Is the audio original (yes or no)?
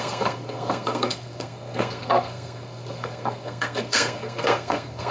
no